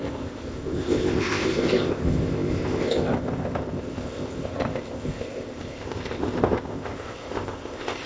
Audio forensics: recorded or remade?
remade